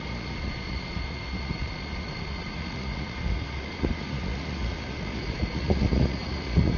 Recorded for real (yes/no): no